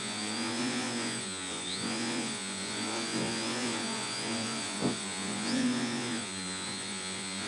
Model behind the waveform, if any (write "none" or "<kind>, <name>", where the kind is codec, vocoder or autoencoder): vocoder, Vocos